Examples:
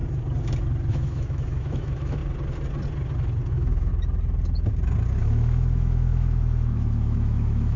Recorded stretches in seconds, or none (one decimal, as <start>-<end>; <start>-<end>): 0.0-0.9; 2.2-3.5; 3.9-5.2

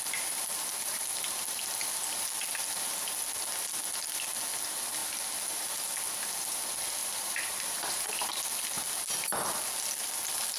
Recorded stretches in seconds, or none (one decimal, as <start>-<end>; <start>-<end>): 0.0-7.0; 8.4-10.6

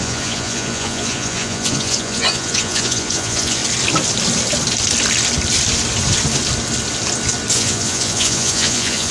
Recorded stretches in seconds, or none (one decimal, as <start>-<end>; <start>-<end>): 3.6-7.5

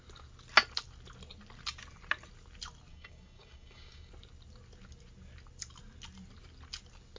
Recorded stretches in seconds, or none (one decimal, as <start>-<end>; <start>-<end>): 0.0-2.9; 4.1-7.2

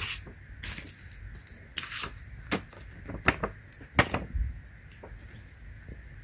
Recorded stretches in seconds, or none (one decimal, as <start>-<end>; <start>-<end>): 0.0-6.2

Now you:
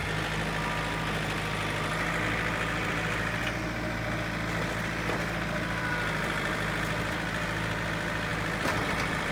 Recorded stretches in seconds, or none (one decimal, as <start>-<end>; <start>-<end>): 0.0-2.2

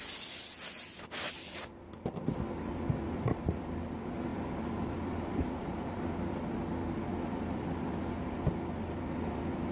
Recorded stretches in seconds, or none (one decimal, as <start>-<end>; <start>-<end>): 0.0-4.3; 8.0-9.7

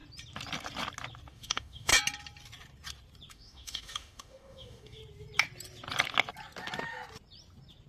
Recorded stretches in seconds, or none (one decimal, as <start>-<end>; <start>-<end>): 0.0-1.3; 1.9-3.3; 5.0-7.9